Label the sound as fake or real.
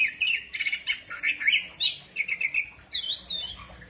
real